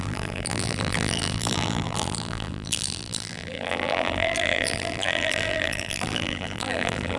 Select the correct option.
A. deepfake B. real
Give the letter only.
A